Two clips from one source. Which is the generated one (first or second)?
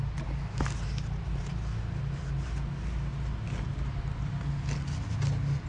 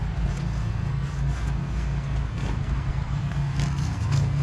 second